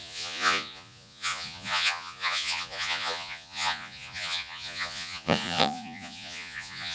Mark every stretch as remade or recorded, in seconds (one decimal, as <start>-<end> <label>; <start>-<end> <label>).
0.0-6.9 remade

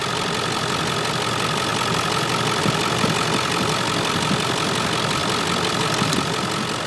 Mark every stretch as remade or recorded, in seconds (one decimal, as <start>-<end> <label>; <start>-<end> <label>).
0.0-6.9 recorded

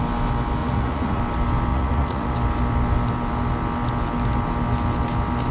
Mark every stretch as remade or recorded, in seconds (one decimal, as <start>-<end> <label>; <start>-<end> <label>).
0.0-0.6 recorded; 0.6-1.2 remade; 1.2-1.7 recorded; 1.7-2.3 remade; 2.3-5.5 recorded

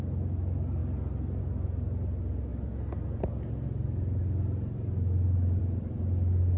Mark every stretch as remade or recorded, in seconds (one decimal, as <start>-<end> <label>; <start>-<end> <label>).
0.0-6.6 recorded

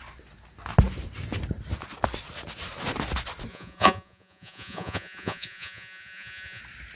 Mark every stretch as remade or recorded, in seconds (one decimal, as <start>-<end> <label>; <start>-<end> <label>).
0.0-3.5 recorded; 3.5-6.6 remade; 6.6-7.0 recorded

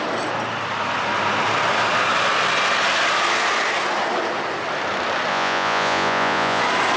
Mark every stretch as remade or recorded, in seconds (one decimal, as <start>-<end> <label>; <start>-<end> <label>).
0.0-5.3 recorded; 5.3-6.6 remade; 6.6-7.0 recorded

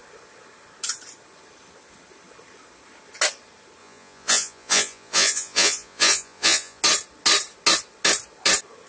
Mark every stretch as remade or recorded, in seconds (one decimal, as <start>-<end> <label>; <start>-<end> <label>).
0.0-3.8 recorded; 3.8-6.8 remade; 6.8-8.9 recorded